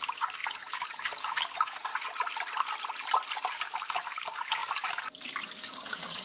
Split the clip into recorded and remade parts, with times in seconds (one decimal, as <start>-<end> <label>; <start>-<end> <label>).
0.0-1.9 remade; 1.9-3.5 recorded; 3.5-6.2 remade